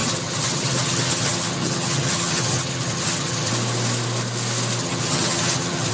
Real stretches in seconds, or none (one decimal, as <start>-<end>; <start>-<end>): 3.5-4.8

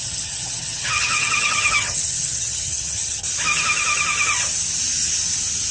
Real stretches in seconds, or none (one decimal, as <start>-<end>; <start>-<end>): 3.2-5.7

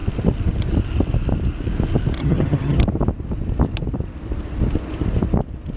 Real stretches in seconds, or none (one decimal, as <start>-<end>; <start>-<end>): 0.0-2.2; 2.8-5.8

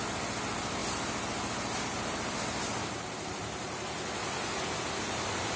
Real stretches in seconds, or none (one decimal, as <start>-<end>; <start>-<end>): 0.0-5.6

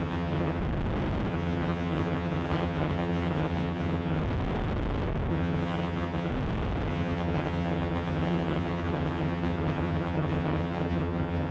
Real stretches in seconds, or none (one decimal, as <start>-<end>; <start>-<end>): 0.6-1.3; 4.2-5.3; 6.3-6.9

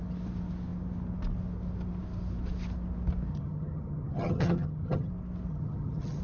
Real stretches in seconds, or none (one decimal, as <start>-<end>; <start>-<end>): 0.0-3.3; 5.1-5.5

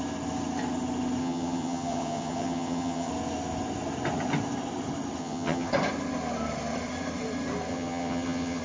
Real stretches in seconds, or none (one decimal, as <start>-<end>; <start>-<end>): 0.0-1.2; 3.1-5.2; 5.7-7.7

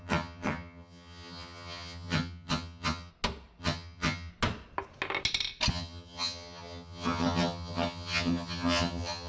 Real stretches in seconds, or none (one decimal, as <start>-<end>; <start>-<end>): 3.1-3.6; 4.3-5.7